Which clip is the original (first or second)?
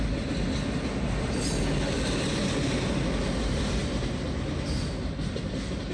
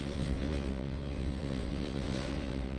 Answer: first